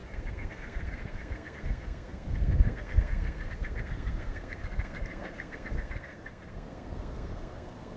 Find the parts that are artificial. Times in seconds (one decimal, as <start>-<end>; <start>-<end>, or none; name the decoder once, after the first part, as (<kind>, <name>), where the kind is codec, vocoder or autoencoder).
0.0-8.0 (codec, SNAC)